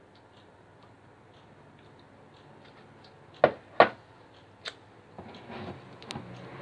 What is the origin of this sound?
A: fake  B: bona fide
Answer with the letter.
B